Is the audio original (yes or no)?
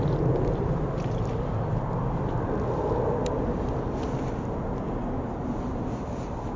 yes